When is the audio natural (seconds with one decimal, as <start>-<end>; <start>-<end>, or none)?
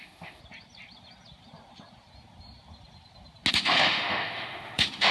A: 0.4-3.5